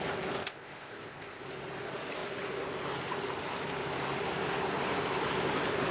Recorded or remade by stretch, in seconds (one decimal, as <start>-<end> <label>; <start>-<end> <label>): 0.0-0.4 recorded; 0.4-1.4 remade; 1.4-5.9 recorded